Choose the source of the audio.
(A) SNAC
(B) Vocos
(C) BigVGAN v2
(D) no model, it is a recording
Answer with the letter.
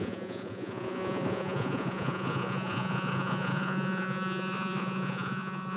B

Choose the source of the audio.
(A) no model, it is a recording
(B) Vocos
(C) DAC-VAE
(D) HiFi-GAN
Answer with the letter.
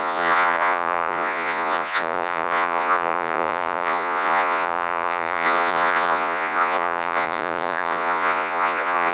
B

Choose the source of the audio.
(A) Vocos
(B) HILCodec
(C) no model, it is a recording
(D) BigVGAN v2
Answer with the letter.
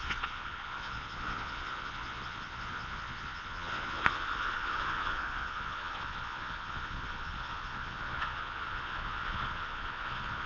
A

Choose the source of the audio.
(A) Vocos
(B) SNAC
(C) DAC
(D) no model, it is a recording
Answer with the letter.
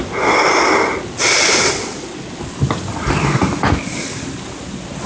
D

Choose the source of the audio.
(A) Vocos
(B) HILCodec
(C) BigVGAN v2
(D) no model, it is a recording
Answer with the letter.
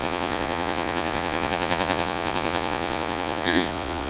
A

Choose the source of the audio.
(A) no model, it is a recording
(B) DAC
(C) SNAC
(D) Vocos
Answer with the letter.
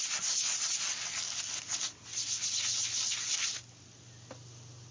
A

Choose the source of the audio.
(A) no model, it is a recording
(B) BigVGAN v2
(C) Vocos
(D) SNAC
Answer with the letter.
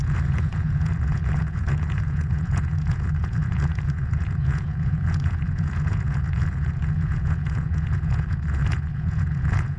C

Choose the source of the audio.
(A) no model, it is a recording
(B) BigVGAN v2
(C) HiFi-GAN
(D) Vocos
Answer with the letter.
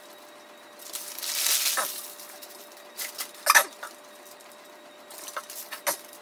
A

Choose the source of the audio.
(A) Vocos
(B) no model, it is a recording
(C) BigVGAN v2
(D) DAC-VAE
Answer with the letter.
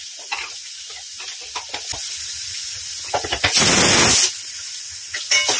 B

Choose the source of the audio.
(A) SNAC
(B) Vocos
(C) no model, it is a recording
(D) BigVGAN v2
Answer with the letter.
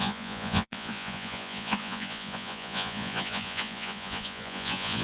B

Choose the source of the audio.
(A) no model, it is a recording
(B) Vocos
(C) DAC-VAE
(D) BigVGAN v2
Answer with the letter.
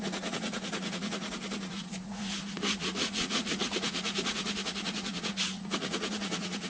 B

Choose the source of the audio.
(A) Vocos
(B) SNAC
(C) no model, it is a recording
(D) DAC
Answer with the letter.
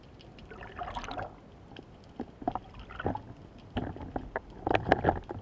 C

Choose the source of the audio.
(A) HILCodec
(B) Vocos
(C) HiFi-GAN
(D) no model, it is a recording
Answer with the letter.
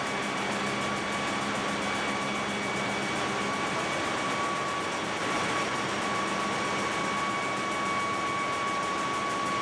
D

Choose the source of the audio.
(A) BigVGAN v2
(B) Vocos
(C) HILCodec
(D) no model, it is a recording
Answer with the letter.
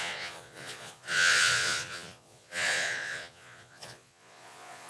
B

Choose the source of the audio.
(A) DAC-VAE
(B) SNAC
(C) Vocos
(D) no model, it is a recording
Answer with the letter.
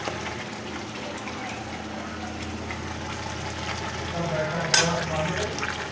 D